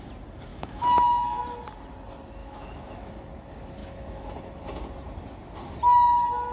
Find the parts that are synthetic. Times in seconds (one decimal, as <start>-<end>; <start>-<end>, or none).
0.5-1.4; 2.4-3.1; 3.8-4.3